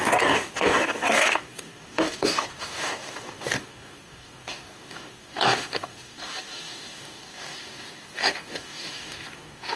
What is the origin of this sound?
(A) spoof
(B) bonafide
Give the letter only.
A